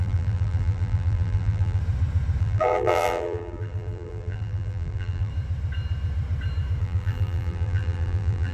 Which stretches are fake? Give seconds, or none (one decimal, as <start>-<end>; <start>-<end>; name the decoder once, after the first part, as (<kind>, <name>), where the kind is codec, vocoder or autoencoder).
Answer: 0.0-1.8 (vocoder, BigVGAN v2); 2.4-5.3; 6.8-8.5